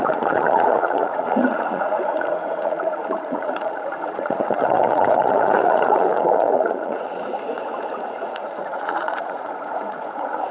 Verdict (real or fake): fake